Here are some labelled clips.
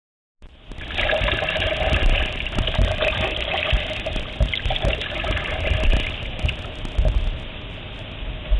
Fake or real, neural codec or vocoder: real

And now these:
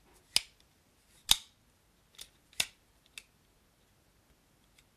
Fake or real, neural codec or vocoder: real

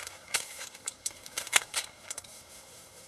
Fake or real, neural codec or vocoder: fake, codec, SNAC